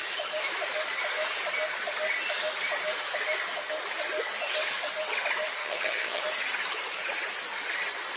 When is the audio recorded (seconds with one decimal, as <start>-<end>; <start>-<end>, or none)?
0.0-5.6; 6.2-8.2